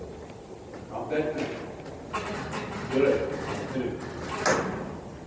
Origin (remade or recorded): recorded